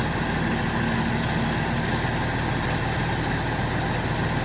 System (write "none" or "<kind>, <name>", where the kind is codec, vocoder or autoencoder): none